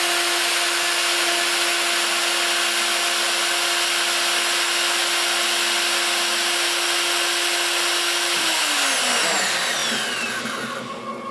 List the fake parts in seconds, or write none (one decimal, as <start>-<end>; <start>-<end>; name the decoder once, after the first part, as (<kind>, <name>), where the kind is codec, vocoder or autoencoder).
none